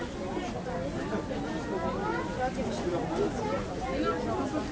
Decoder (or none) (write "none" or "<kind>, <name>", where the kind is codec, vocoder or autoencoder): none